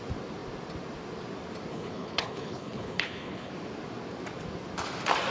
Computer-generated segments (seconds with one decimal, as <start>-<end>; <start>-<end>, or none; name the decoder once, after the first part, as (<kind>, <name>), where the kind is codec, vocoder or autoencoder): 1.7-3.5 (codec, HILCodec)